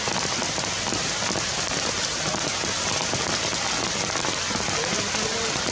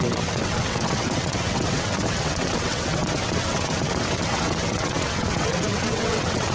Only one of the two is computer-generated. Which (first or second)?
second